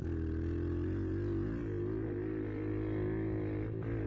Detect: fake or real real